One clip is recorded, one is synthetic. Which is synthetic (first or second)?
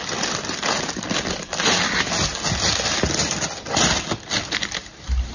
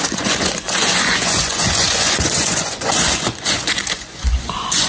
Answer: second